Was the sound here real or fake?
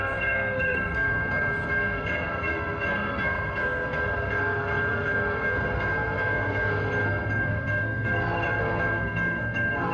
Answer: fake